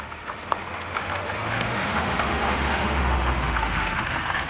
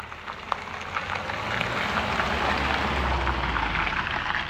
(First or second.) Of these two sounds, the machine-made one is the first